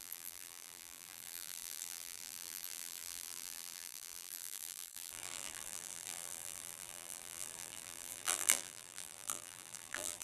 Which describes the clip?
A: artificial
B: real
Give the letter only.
A